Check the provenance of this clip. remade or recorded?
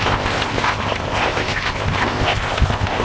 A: remade